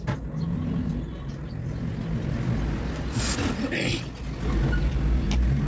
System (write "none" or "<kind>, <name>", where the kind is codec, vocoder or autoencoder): none